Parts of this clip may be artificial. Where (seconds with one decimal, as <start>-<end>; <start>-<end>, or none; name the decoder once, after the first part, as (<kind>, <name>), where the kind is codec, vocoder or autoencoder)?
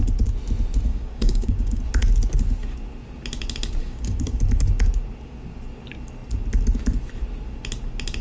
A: 0.9-1.8 (codec, DAC); 3.8-4.4